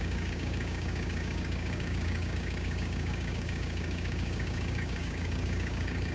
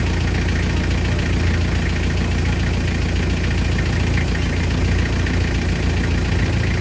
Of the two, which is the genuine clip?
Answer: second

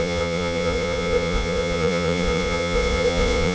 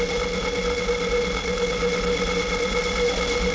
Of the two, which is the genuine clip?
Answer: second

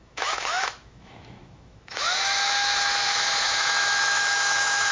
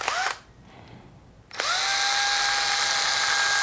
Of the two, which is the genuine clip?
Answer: second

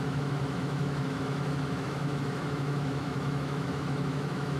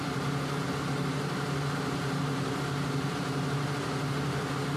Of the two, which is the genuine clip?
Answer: second